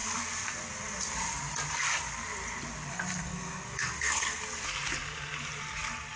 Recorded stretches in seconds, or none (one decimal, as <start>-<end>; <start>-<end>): 0.0-2.9; 4.4-6.2